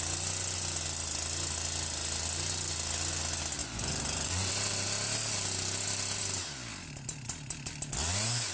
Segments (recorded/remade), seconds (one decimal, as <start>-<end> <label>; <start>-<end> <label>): 0.0-3.6 recorded; 3.6-4.5 remade; 4.5-8.5 recorded